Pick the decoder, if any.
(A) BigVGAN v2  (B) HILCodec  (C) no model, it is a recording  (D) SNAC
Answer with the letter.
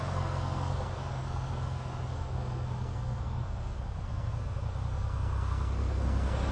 D